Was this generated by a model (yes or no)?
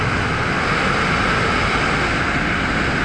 no